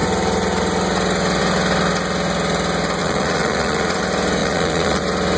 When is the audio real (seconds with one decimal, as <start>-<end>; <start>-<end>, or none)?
0.0-3.0; 4.0-4.4; 5.0-5.4

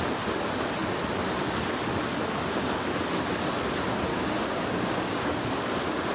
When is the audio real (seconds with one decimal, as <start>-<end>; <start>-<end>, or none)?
0.0-4.1; 5.5-6.1

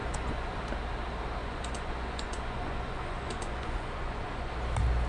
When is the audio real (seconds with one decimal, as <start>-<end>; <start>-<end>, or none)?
0.6-1.4; 4.5-5.1

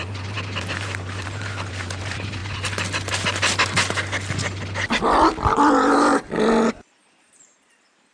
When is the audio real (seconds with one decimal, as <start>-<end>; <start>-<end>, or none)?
2.4-6.7

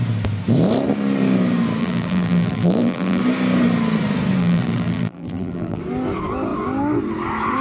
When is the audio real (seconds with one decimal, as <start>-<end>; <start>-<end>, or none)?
0.0-1.8; 3.2-4.4; 5.8-7.6

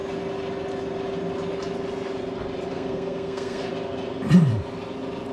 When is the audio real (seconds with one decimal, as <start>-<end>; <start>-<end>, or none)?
0.0-2.7; 3.7-5.3

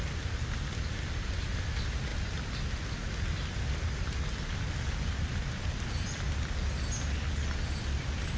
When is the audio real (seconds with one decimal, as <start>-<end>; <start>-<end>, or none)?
0.0-8.4